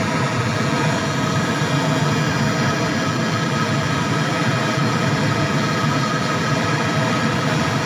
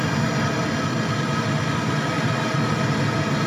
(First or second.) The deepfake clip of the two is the first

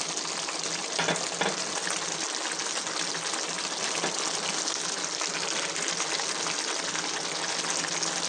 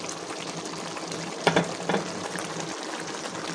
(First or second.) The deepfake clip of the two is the second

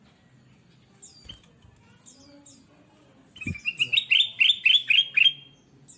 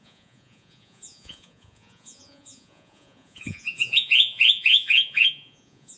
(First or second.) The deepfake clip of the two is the second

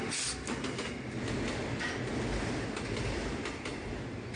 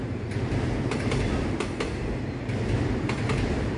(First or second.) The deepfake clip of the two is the second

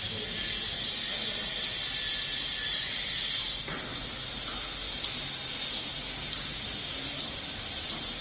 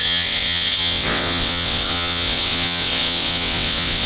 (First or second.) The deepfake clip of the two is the second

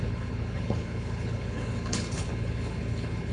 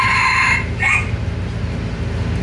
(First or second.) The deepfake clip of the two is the first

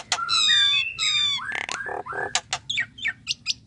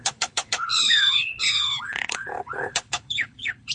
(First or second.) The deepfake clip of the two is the second